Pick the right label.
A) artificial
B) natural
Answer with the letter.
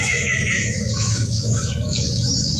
A